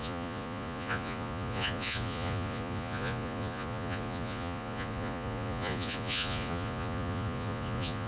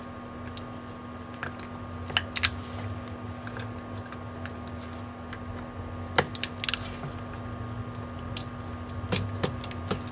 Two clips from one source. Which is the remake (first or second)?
first